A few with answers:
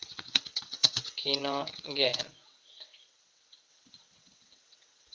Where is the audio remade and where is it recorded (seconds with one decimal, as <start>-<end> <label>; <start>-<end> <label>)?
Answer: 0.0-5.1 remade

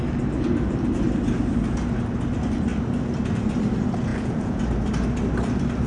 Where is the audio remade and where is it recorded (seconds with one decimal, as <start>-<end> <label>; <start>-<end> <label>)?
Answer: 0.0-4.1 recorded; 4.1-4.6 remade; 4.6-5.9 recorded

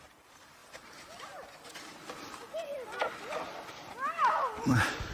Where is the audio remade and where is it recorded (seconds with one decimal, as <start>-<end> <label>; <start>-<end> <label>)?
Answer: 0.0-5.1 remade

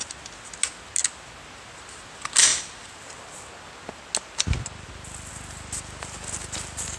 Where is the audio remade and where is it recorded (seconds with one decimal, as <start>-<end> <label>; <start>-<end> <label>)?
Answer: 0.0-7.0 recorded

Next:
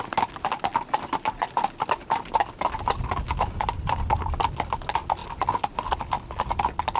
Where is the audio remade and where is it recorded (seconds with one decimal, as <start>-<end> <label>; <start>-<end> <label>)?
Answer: 0.0-7.0 recorded

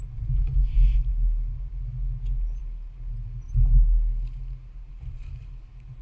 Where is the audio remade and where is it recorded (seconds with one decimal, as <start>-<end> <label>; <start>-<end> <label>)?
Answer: 0.0-6.0 recorded

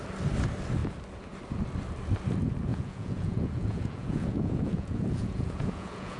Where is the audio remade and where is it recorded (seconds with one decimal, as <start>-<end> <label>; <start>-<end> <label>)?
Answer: 0.0-2.7 recorded; 2.7-6.2 remade